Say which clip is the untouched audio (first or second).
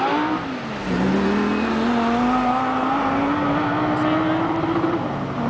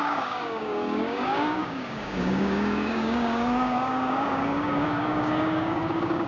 first